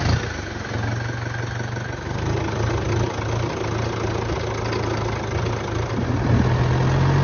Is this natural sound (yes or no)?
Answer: yes